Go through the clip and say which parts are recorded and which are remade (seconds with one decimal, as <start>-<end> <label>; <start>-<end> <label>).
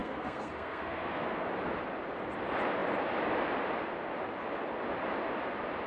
0.0-1.5 remade; 1.5-5.9 recorded